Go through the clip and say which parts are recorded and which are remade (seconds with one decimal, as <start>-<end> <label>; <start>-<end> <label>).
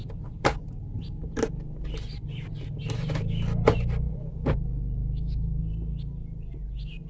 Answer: 0.0-5.0 recorded; 5.0-5.6 remade; 5.6-7.1 recorded